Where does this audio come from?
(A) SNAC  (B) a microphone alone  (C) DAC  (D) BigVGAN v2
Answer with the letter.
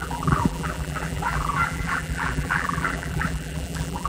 D